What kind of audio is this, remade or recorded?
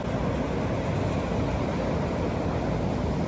recorded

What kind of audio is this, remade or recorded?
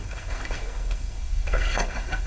remade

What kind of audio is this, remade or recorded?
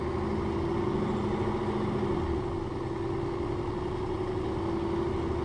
recorded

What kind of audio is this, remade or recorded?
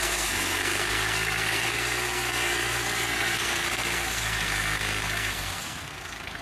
remade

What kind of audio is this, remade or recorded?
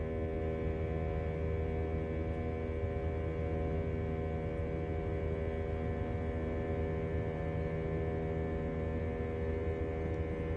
recorded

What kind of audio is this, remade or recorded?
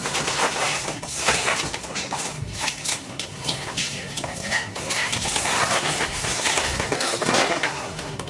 remade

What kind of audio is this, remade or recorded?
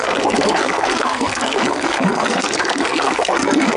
remade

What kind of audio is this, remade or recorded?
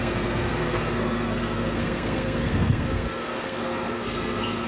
remade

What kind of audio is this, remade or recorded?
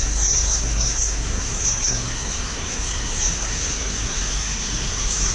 remade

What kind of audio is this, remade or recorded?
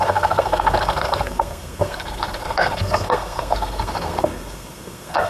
remade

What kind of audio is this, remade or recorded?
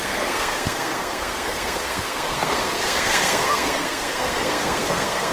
remade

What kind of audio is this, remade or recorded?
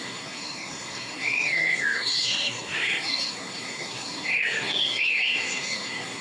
remade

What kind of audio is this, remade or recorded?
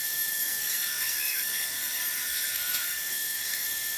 remade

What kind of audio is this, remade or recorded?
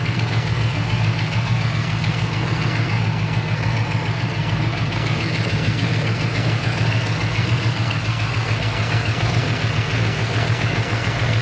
remade